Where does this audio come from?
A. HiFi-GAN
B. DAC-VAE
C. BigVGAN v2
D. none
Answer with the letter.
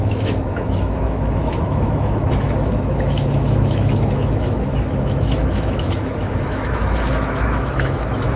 B